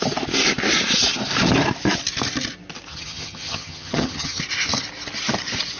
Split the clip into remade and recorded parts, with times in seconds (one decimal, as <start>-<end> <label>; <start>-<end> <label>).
0.0-2.9 recorded; 2.9-4.4 remade; 4.4-5.8 recorded